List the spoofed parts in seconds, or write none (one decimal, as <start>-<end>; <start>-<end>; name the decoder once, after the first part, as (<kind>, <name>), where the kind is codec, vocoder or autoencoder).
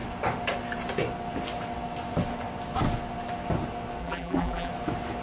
4.0-4.7 (vocoder, BigVGAN v2)